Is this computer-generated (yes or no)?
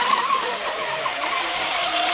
no